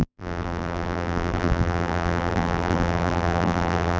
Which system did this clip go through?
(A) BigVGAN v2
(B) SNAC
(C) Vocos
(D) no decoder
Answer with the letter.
A